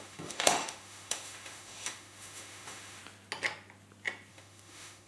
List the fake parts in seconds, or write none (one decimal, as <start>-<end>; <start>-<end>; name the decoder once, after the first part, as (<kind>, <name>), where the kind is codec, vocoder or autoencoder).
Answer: 0.0-3.0 (autoencoder, DAC-VAE); 4.3-5.1